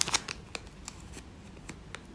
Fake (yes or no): no